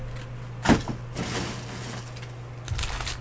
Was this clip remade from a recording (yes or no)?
no